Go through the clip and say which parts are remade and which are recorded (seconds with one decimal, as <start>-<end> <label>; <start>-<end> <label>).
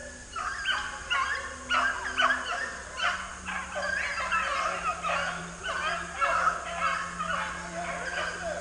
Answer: 0.0-8.6 recorded